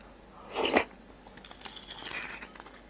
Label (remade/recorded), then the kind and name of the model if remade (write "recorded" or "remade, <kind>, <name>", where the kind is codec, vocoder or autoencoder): recorded